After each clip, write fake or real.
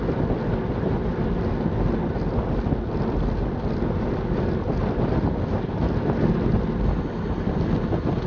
real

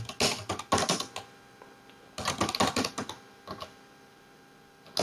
real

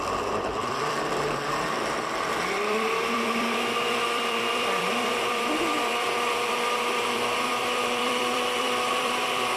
fake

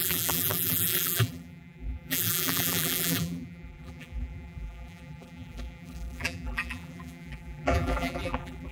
fake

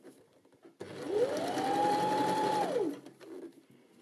real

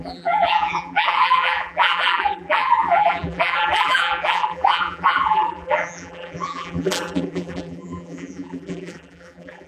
fake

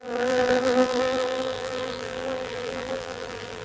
fake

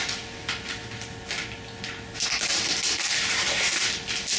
real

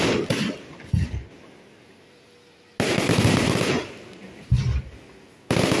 real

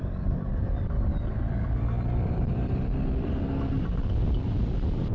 fake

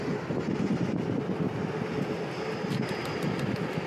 real